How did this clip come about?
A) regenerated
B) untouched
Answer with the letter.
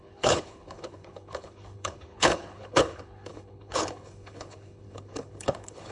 A